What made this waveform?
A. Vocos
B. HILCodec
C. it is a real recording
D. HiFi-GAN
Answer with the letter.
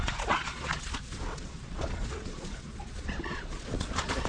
A